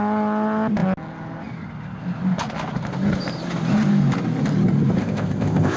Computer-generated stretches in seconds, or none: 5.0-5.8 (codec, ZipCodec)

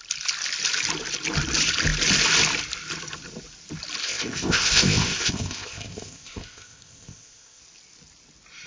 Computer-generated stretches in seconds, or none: 4.0-7.6 (codec, ZipCodec)

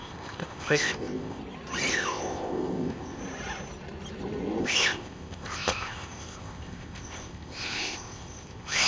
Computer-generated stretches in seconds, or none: 0.0-1.4 (codec, ZipCodec); 1.9-3.2; 4.6-8.9

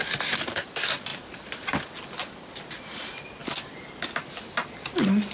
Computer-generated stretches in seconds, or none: none

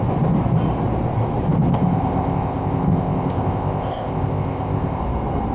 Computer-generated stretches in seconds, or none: 1.7-5.0 (codec, ZipCodec)

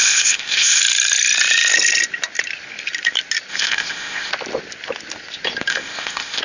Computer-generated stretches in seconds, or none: 0.0-0.8 (codec, ZipCodec); 3.5-4.3; 5.7-6.4